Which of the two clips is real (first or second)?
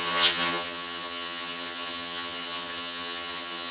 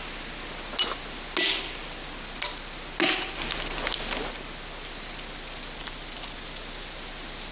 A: second